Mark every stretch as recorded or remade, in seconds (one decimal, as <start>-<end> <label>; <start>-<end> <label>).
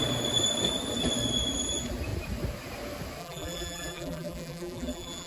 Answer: 0.0-3.2 recorded; 3.2-5.3 remade